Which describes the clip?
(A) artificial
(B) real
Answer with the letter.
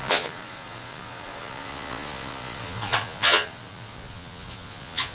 A